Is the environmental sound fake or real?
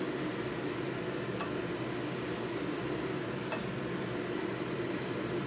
real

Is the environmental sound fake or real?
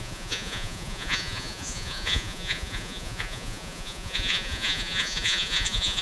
fake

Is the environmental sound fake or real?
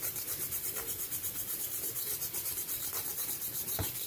fake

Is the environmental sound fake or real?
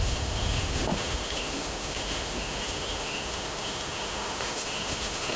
fake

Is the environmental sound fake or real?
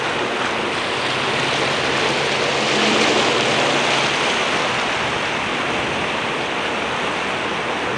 real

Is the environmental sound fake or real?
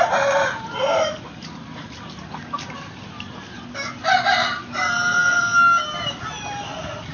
real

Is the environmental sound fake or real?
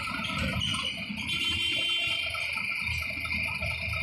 real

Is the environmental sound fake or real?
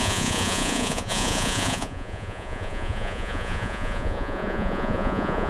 fake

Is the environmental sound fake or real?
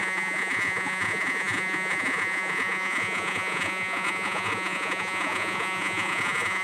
fake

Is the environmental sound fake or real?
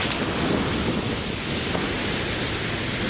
real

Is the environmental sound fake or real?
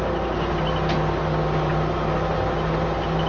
real